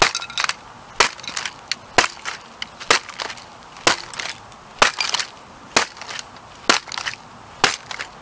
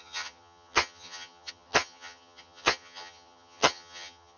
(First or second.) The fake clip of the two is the second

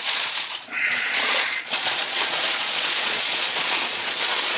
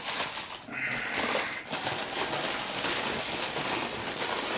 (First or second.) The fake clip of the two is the first